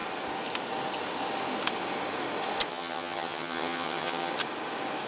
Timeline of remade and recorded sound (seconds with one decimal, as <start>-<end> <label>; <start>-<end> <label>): 0.0-2.7 recorded; 2.7-4.3 remade; 4.3-5.1 recorded